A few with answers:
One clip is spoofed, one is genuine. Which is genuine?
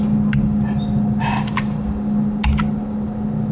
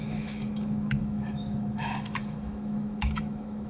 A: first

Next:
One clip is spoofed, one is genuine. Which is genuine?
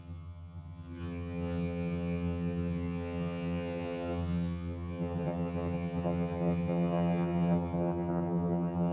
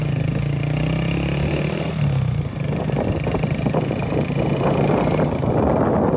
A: second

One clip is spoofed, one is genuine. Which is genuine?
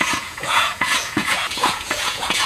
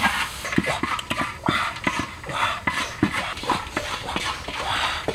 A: second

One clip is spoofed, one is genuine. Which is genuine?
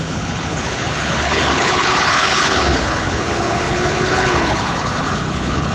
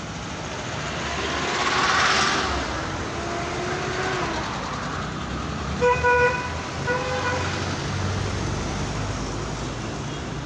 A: second